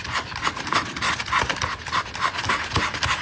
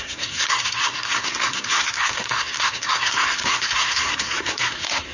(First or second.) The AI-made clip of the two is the second